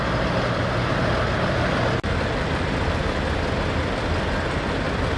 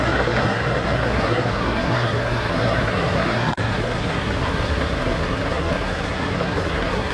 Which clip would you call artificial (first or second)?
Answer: second